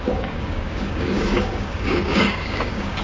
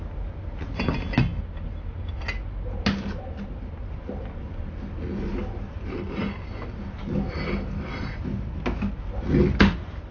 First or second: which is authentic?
second